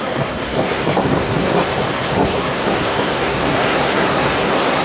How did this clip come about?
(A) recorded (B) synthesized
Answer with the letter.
B